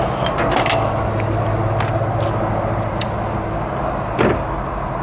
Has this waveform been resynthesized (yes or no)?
no